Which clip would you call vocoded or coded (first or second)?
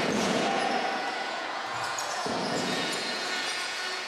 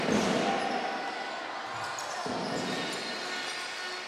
first